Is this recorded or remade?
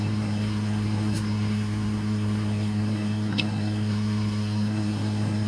remade